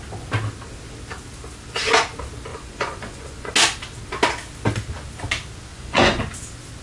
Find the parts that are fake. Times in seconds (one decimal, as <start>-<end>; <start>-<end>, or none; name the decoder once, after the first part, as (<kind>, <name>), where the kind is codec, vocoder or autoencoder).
2.5-3.5 (vocoder, Vocos); 5.7-6.2